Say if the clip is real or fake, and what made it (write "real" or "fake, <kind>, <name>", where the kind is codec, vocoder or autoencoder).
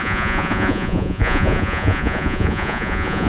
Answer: fake, vocoder, Vocos